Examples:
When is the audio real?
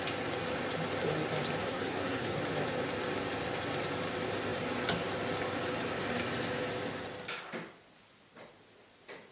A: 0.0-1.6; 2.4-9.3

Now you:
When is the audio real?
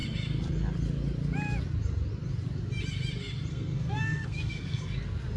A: 0.0-3.5; 4.9-5.4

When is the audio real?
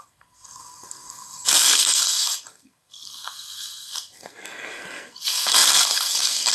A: none